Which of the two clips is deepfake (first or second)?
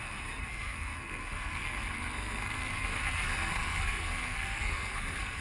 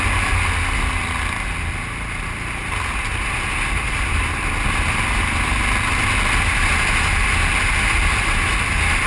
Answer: first